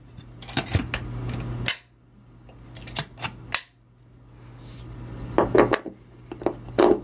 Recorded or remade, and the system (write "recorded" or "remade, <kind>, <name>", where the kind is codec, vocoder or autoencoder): recorded